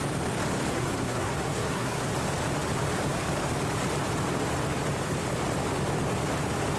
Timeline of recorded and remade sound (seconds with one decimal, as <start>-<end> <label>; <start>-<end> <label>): 0.0-0.7 recorded; 0.7-2.1 remade; 2.1-6.8 recorded

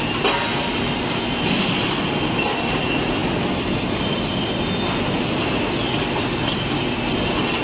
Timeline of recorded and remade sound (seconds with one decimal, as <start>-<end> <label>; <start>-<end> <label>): 0.0-7.6 recorded